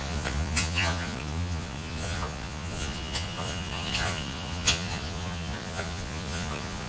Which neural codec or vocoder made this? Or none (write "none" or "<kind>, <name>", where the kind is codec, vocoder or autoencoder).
vocoder, Vocos